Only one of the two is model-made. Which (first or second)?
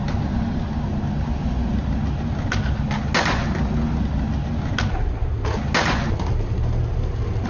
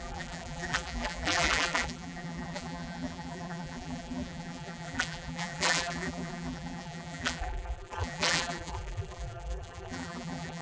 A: second